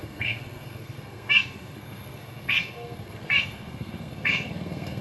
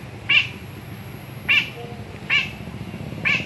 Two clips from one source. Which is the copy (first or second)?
first